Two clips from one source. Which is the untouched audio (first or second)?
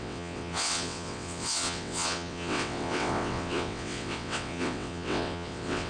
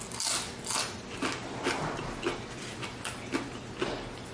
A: second